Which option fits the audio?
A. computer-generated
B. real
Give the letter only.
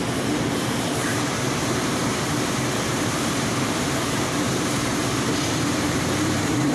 A